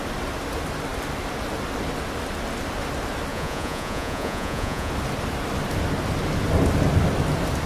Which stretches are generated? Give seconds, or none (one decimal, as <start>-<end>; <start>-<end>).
3.3-4.9

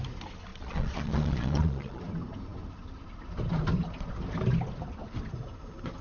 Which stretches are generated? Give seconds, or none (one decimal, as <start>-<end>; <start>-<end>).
0.5-2.0

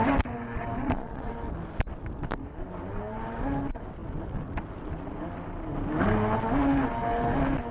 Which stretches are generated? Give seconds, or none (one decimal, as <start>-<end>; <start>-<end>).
0.8-1.3